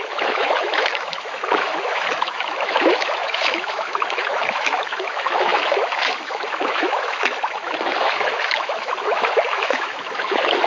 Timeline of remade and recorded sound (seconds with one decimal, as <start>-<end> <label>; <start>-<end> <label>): 0.0-10.7 remade